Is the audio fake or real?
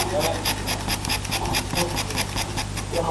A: real